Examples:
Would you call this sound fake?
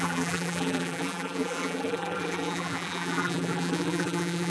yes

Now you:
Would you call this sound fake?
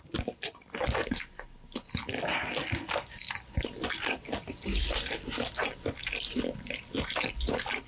no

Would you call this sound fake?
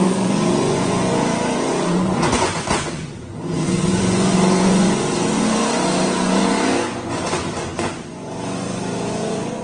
yes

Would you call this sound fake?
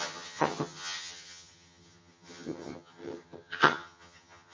yes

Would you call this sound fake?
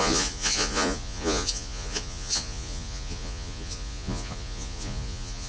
yes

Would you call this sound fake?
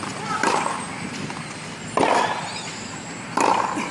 no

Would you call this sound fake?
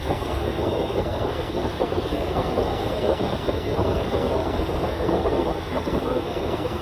yes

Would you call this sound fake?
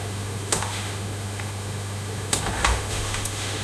yes